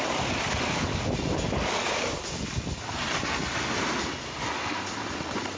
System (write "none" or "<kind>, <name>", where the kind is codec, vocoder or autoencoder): none